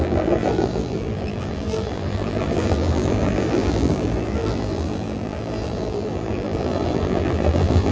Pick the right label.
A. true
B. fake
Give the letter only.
B